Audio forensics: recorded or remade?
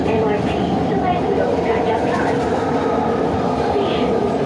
recorded